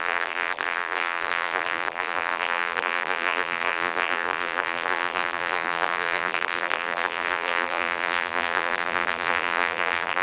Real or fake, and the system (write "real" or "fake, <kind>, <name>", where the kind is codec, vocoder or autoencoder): fake, vocoder, BigVGAN v2